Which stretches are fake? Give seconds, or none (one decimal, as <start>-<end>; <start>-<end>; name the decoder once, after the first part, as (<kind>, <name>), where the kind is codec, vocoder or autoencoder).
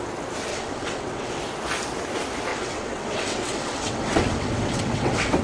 0.5-1.4 (vocoder, WaveNeXt); 2.5-5.4